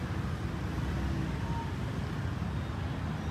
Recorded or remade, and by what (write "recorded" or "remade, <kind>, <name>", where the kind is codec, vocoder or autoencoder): recorded